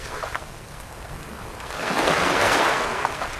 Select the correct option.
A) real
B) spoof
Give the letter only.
B